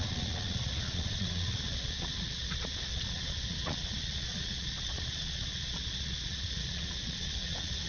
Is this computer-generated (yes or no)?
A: yes